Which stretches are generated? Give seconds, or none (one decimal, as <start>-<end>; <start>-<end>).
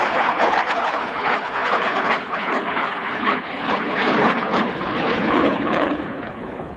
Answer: 0.0-6.8